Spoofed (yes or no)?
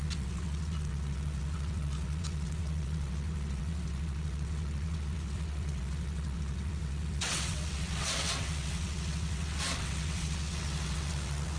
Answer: yes